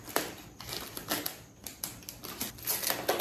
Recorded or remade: recorded